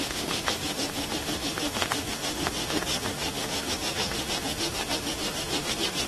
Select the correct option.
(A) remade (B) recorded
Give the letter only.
A